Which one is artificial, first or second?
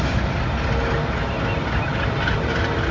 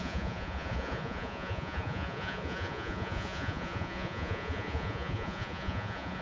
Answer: second